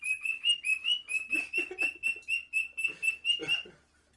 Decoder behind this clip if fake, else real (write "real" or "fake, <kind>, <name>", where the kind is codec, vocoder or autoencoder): real